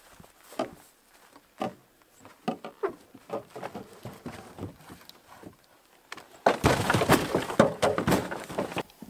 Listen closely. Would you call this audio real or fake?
real